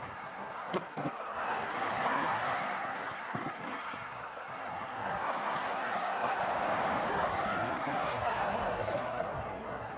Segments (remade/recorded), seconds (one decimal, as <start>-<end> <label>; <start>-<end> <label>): 0.0-6.4 remade; 6.4-7.1 recorded; 7.1-10.0 remade